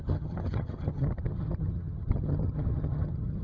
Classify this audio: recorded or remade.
remade